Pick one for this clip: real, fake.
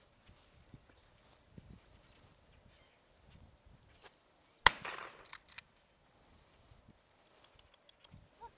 real